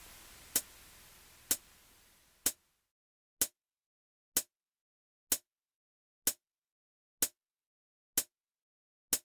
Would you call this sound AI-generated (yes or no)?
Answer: no